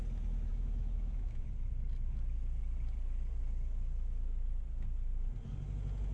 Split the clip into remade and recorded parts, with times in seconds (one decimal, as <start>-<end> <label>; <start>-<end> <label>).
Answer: 0.0-0.5 recorded; 0.5-1.5 remade; 1.5-6.1 recorded